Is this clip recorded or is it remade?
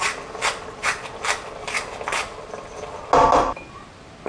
recorded